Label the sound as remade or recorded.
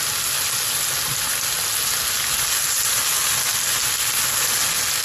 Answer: recorded